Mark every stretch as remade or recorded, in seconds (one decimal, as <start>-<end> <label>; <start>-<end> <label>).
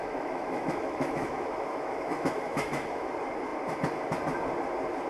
0.0-3.1 remade; 3.1-5.1 recorded